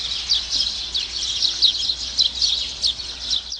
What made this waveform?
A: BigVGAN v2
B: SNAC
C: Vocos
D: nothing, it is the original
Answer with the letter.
D